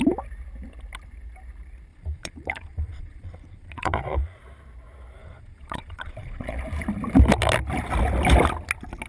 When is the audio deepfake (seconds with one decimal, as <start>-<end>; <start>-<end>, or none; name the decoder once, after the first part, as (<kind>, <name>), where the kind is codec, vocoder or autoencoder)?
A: 1.9-4.4 (vocoder, Vocos); 5.2-6.6